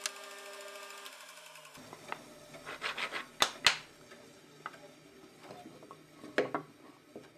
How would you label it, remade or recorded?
recorded